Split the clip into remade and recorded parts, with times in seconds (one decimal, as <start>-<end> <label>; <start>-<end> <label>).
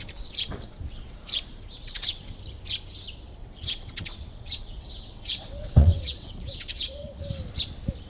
0.0-1.8 recorded; 1.8-2.4 remade; 2.4-3.4 recorded; 3.4-7.2 remade; 7.2-8.1 recorded